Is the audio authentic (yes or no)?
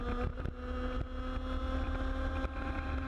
yes